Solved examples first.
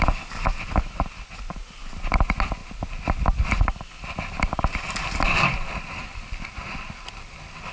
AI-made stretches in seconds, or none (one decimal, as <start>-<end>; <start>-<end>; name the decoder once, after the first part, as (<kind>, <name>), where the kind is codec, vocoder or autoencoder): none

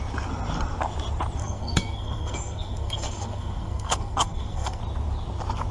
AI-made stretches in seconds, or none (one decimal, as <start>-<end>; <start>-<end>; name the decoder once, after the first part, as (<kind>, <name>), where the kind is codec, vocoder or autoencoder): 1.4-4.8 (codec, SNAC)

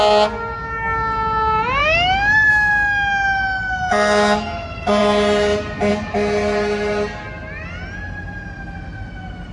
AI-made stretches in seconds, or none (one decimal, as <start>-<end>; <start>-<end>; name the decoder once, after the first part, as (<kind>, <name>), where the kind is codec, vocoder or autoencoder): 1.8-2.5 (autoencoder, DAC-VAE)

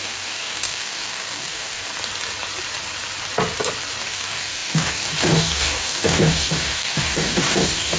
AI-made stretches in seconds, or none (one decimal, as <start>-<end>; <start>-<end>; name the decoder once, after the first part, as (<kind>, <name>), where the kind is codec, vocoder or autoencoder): 0.0-1.9 (codec, DAC); 4.0-8.0